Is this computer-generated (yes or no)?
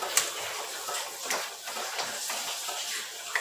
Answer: yes